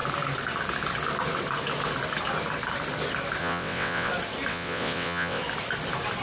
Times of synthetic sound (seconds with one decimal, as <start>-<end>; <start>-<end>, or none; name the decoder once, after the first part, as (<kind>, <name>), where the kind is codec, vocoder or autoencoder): 3.4-4.1 (vocoder, WaveNeXt); 4.5-5.4